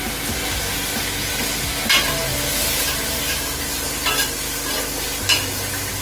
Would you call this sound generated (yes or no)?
no